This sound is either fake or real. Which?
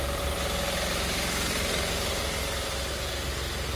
real